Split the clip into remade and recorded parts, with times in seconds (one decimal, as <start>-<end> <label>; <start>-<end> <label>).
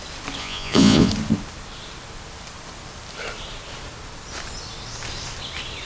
0.0-0.4 recorded; 0.4-1.1 remade; 1.1-5.9 recorded